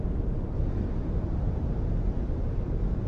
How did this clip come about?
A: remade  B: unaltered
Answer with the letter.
B